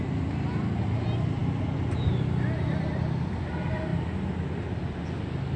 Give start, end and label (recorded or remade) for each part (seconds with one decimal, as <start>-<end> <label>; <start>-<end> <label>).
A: 0.0-5.6 recorded